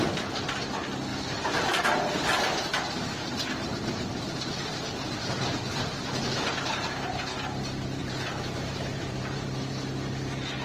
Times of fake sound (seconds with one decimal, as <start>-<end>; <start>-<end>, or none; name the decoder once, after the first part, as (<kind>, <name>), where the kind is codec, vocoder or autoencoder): 1.1-2.3 (vocoder, BigVGAN v2); 3.6-4.2; 8.0-9.5